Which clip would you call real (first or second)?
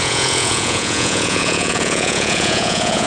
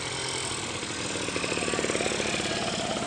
second